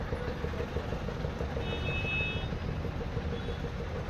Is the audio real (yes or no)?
yes